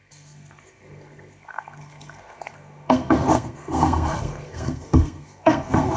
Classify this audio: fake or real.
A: fake